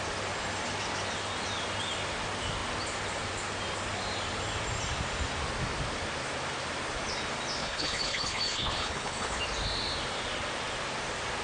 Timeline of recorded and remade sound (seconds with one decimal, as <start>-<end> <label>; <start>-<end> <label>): 0.0-7.6 recorded; 7.6-9.4 remade; 9.4-11.4 recorded